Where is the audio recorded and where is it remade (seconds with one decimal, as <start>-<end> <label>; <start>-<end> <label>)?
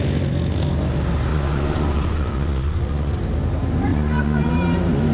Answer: 0.0-1.3 recorded; 1.3-3.1 remade; 3.1-3.9 recorded; 3.9-4.5 remade; 4.5-5.1 recorded